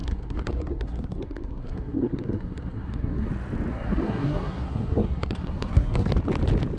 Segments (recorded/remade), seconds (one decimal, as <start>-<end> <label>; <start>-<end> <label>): 0.0-3.3 remade; 3.3-3.7 recorded; 3.7-6.1 remade; 6.1-6.8 recorded